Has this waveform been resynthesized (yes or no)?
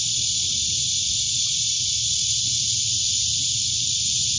no